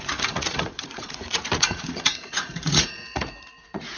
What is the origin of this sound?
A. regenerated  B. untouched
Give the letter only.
A